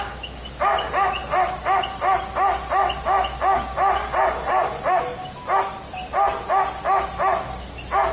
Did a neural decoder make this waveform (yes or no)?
no